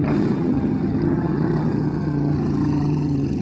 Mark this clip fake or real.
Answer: fake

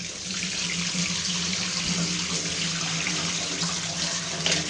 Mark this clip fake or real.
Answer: real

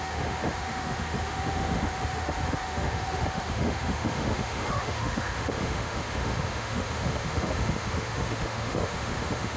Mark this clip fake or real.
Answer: fake